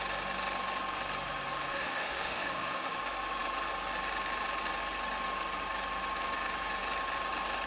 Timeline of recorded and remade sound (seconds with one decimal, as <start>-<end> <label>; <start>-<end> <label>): 0.0-1.7 recorded; 1.7-3.0 remade; 3.0-7.7 recorded